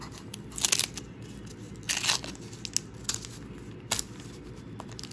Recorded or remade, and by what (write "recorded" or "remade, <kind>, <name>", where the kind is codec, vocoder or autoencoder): recorded